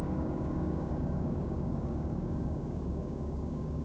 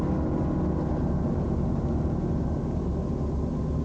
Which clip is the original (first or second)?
second